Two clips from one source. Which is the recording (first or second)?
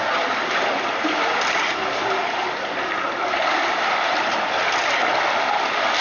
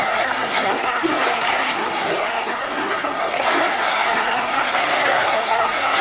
first